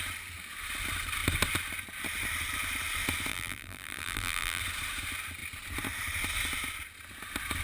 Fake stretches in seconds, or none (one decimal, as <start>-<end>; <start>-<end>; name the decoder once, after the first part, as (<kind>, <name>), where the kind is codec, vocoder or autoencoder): 3.3-4.6 (vocoder, BigVGAN v2)